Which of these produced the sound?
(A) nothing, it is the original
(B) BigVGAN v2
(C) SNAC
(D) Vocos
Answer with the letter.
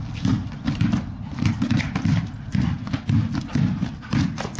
A